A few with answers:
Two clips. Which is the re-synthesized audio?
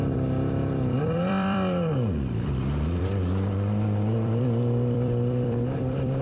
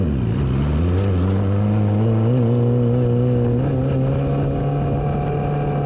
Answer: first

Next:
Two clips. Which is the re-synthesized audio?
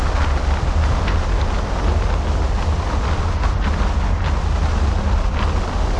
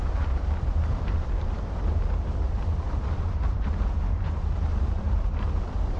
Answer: second